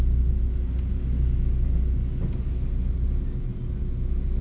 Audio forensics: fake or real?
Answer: real